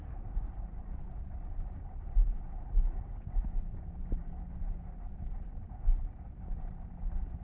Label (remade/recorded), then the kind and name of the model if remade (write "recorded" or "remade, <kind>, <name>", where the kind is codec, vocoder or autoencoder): remade, vocoder, BigVGAN v2